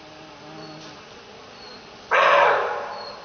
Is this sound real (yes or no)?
yes